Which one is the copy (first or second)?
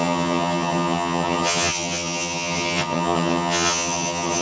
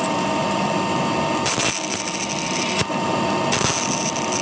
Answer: first